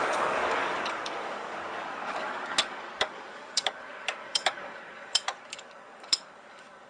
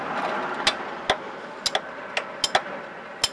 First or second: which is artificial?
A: first